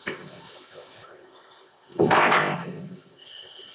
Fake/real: fake